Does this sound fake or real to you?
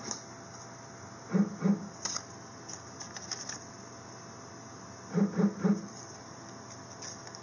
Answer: real